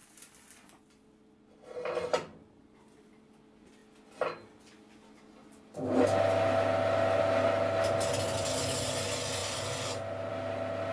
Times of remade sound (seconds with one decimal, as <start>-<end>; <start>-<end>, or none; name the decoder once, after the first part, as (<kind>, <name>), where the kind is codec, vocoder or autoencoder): none